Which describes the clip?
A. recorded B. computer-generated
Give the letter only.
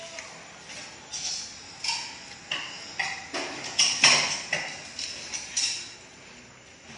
A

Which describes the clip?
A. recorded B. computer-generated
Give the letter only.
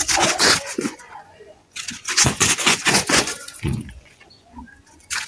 B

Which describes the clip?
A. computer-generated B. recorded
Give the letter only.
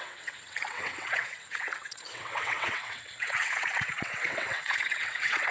A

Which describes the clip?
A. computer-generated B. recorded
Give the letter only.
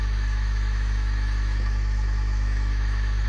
A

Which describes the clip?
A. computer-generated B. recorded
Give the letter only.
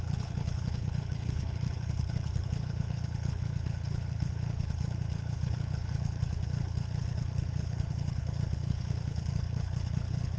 A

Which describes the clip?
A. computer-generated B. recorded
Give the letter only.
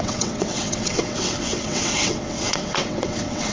A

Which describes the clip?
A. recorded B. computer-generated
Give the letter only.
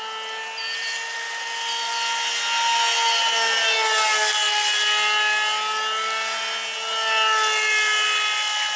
A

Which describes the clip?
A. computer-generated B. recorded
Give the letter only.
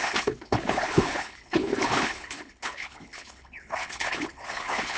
A